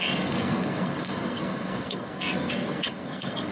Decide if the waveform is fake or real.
fake